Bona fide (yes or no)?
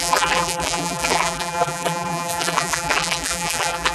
no